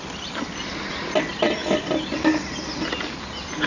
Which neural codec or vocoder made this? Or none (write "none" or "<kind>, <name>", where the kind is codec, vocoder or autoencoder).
none